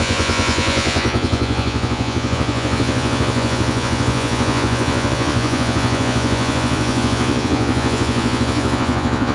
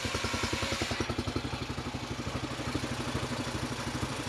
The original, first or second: second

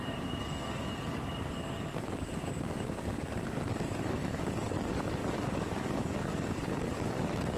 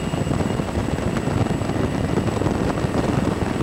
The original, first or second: second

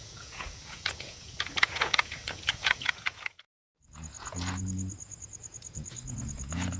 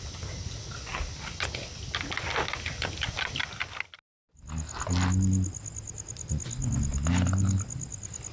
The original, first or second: second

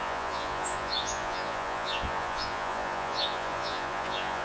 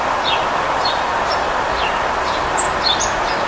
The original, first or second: second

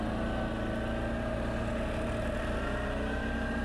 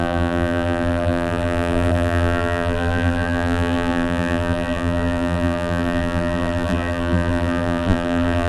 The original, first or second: first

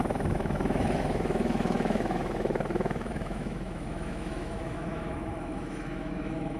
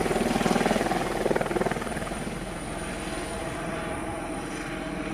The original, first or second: second